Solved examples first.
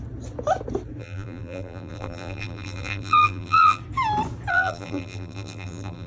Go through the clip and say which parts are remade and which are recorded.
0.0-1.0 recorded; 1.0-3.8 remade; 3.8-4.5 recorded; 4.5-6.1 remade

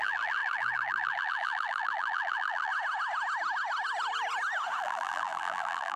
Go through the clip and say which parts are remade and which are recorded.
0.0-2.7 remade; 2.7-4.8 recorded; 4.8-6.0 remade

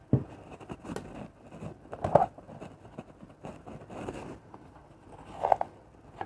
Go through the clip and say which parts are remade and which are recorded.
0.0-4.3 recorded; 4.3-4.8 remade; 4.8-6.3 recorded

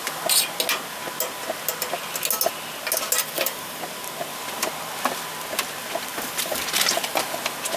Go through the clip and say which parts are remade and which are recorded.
0.0-3.2 recorded; 3.2-3.8 remade; 3.8-6.1 recorded; 6.1-6.6 remade; 6.6-7.8 recorded